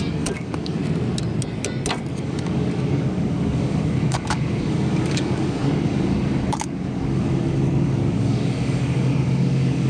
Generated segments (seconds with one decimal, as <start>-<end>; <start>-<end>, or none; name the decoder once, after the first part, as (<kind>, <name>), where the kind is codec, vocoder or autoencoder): 0.0-0.8 (codec, DAC); 2.1-9.9